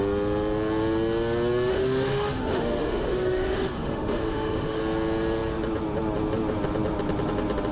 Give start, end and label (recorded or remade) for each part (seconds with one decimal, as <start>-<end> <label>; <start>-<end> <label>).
0.0-1.7 recorded; 1.7-4.8 remade; 4.8-7.7 recorded